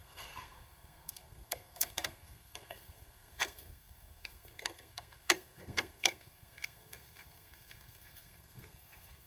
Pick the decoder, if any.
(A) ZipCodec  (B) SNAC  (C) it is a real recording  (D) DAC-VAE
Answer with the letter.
B